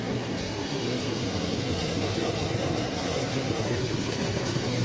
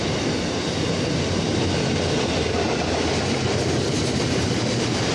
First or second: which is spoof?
first